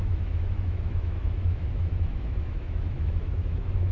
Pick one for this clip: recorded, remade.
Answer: remade